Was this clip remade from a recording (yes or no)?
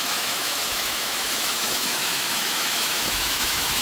yes